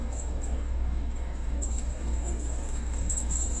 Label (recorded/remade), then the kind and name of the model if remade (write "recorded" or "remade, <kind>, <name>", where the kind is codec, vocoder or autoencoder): remade, codec, DAC